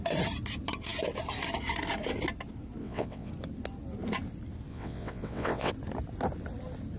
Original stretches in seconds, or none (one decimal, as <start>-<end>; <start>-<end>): 0.0-2.8; 3.3-4.7; 5.7-7.0